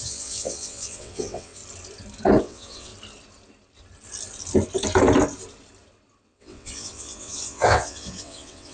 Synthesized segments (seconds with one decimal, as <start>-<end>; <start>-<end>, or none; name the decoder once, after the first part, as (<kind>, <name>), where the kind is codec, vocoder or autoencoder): 0.0-1.6 (vocoder, WaveNeXt); 2.4-2.9; 6.2-8.7